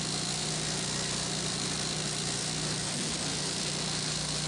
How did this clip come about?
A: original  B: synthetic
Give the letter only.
A